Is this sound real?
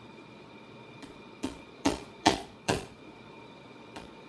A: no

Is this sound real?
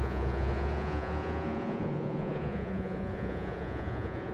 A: no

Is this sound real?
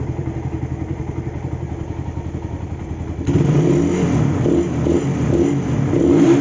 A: yes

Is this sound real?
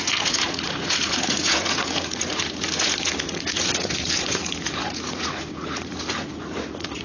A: no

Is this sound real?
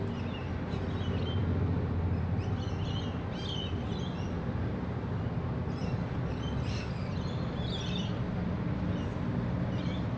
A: yes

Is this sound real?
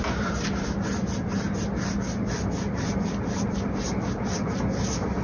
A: yes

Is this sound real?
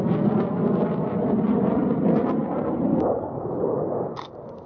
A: yes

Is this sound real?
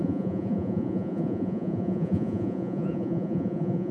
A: no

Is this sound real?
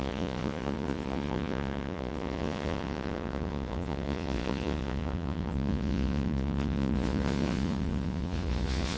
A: no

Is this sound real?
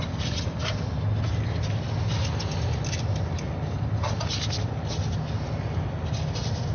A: yes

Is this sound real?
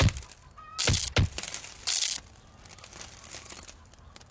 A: yes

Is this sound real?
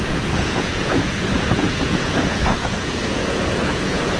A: no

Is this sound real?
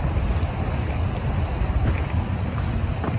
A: yes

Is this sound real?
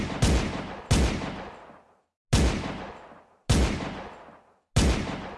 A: yes